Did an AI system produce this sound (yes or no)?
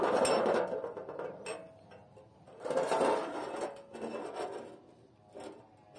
no